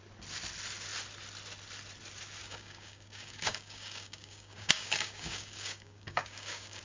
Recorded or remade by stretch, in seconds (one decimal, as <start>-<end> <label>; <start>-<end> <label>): 0.0-2.4 recorded; 2.4-6.8 remade